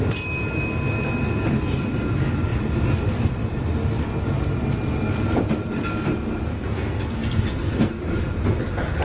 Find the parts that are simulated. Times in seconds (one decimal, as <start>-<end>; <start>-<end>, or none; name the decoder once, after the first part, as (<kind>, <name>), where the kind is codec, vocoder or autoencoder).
6.5-8.0 (codec, SNAC)